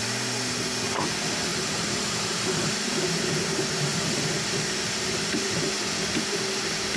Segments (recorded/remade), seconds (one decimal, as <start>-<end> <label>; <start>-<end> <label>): 0.0-0.6 remade; 0.6-1.5 recorded; 1.5-3.2 remade; 3.2-3.9 recorded; 3.9-5.7 remade; 5.7-7.0 recorded